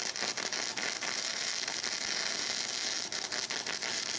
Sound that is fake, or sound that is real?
real